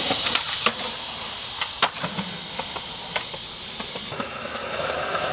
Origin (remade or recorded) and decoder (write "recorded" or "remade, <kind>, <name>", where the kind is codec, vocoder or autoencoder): recorded